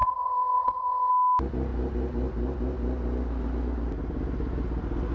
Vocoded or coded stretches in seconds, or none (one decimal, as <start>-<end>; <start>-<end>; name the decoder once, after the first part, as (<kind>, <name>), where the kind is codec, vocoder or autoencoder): 0.0-1.1 (codec, ZipCodec)